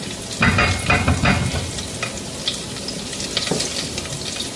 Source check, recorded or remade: recorded